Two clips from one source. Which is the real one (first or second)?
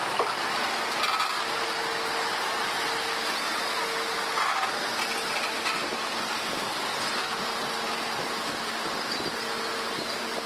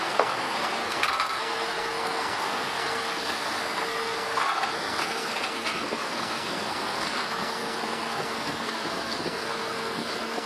first